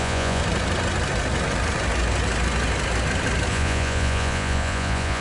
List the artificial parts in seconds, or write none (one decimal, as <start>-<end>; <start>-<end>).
0.0-0.4; 3.5-5.2

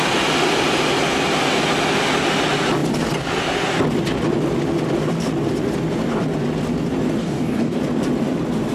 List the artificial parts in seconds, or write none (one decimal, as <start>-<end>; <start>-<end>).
7.2-7.8

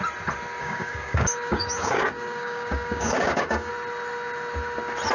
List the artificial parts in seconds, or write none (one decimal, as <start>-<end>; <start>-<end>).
0.6-3.7